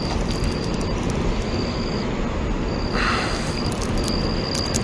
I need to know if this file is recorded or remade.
recorded